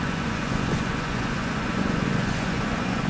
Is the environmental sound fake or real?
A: fake